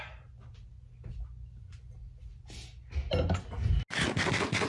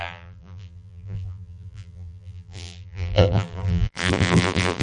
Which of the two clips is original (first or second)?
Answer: first